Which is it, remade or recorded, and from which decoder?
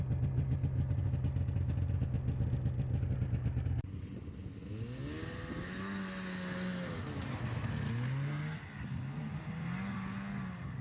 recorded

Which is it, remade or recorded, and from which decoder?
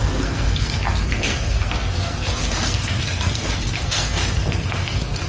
remade, codec, SNAC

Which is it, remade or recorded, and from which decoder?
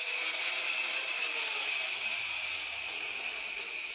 recorded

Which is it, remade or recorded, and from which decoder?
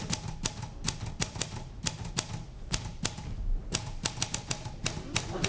recorded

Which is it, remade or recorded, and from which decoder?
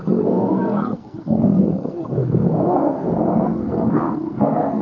remade, codec, SNAC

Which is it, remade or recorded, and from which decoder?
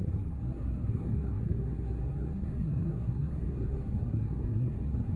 remade, codec, SNAC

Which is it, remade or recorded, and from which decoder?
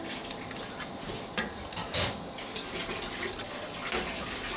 recorded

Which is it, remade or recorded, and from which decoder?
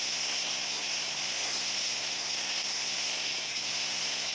remade, codec, SNAC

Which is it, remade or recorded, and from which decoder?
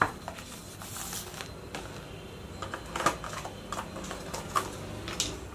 recorded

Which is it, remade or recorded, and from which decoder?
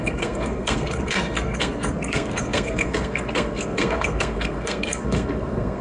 remade, codec, SNAC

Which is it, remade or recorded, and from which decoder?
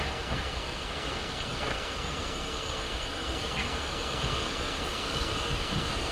remade, codec, SNAC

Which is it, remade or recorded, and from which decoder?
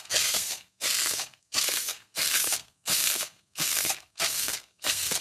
remade, codec, SNAC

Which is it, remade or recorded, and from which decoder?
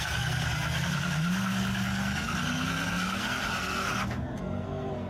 remade, codec, SNAC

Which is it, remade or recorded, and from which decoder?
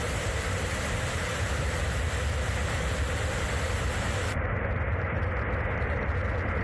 recorded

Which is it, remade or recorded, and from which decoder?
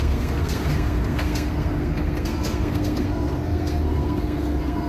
remade, codec, SNAC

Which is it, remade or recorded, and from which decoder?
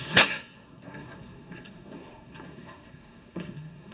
remade, codec, SNAC